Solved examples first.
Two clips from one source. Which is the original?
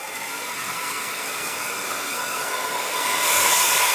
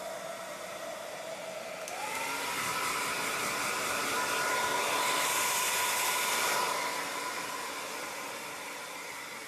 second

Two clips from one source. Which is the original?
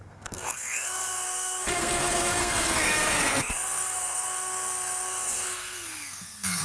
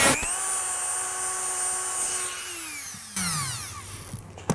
second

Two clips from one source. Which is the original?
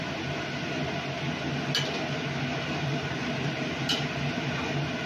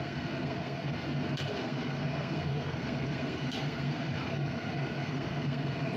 first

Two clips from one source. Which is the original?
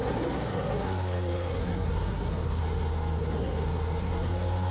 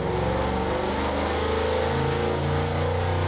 second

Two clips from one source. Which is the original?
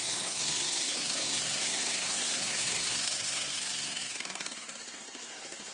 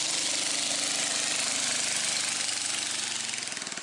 second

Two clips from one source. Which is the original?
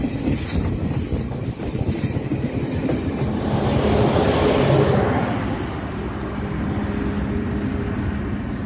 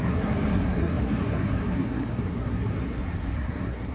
first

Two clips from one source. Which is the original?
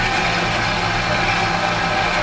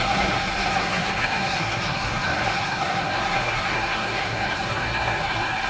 first